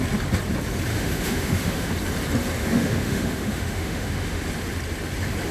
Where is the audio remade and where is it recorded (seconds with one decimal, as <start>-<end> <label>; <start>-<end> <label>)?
0.0-0.9 recorded; 0.9-1.9 remade; 1.9-2.6 recorded; 2.6-4.4 remade; 4.4-5.5 recorded